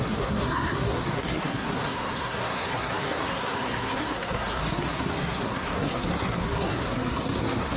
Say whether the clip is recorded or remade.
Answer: remade